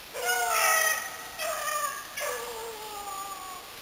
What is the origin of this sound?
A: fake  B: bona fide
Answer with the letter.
B